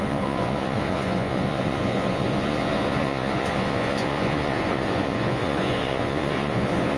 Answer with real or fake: fake